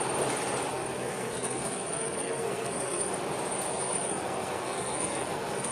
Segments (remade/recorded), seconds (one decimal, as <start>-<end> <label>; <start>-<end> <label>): 0.0-0.7 recorded; 0.7-3.1 remade; 3.1-3.7 recorded; 3.7-5.7 remade